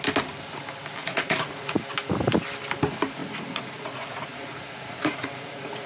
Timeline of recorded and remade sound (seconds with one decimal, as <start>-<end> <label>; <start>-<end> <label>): 0.0-1.0 recorded; 1.0-1.8 remade; 1.8-3.2 recorded; 3.2-5.9 remade